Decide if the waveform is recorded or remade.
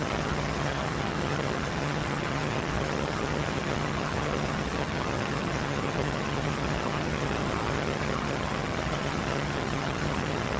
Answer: remade